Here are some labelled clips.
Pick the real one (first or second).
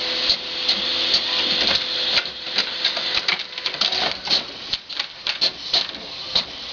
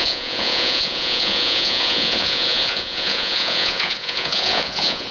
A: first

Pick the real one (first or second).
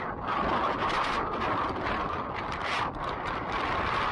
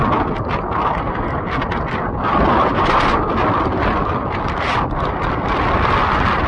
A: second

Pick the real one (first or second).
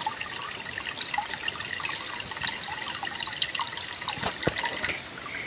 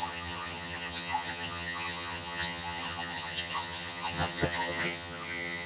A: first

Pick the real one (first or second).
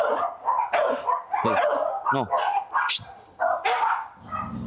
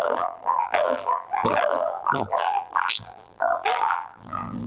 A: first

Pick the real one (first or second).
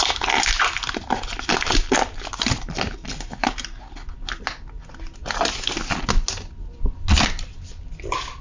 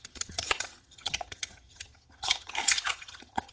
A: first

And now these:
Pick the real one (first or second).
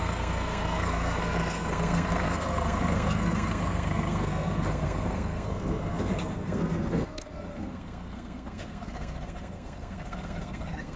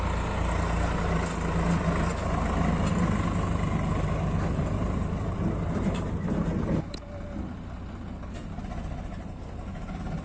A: second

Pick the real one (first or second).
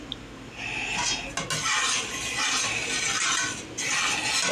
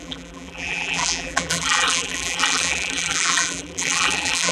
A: first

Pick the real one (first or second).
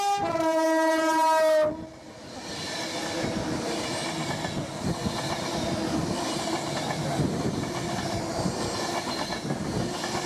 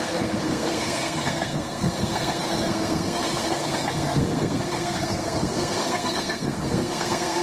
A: first